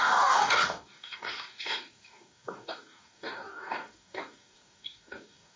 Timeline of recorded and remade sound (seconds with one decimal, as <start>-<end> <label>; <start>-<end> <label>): 0.0-5.6 remade